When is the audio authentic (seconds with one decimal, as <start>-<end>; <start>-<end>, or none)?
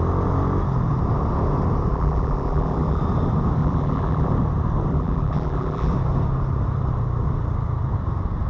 0.0-1.9; 3.0-3.6; 4.3-4.9; 5.9-8.5